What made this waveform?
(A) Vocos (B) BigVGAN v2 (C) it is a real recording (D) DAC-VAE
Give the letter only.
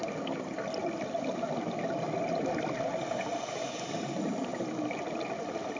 C